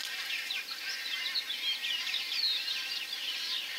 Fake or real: real